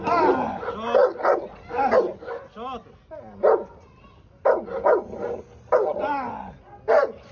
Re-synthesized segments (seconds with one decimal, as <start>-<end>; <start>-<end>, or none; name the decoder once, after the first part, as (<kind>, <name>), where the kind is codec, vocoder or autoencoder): none